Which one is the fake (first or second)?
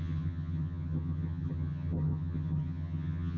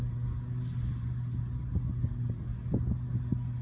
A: first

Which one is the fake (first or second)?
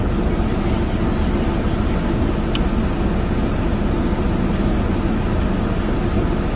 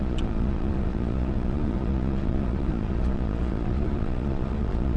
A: second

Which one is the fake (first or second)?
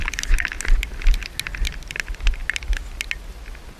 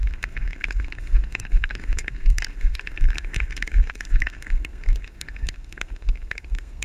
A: second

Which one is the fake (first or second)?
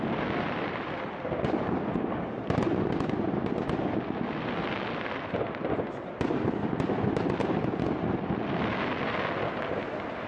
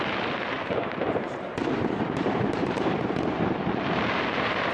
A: second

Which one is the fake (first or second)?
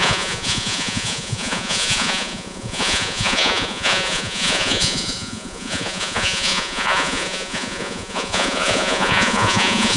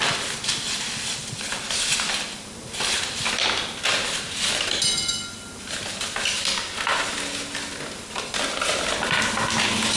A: first